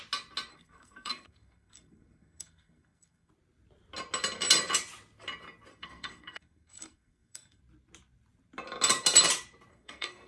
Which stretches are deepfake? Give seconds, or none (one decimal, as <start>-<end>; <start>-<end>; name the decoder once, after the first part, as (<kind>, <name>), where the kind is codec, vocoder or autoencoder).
0.5-3.3 (codec, SNAC); 5.7-7.6; 9.7-10.3

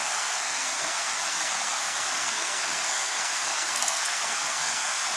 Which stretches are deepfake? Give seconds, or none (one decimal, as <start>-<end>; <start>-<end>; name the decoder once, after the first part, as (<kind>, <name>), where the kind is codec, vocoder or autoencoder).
0.0-5.2 (codec, SNAC)